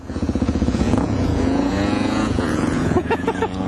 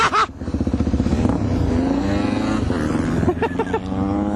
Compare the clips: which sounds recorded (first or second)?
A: second